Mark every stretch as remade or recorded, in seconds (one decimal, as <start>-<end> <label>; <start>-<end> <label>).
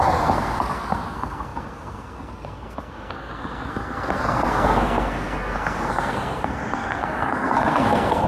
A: 0.0-8.3 remade